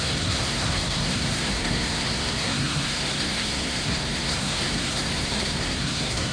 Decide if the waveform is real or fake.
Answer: fake